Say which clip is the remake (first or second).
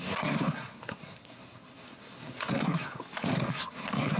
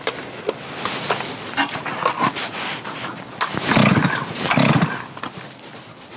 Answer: first